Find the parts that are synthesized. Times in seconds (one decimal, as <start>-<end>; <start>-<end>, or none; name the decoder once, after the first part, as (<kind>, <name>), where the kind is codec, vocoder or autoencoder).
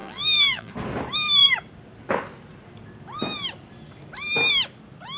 0.0-0.7 (vocoder, BigVGAN v2)